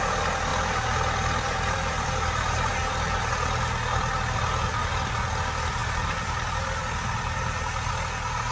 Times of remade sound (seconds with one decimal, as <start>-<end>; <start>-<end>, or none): 0.5-2.7; 5.8-7.9